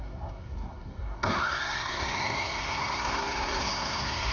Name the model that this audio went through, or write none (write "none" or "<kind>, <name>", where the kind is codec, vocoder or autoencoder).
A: codec, SNAC